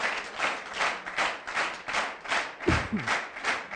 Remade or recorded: recorded